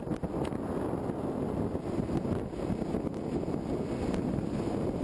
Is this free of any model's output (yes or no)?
yes